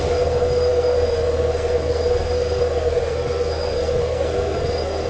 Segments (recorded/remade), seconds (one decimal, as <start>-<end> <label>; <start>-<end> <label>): 0.0-5.1 remade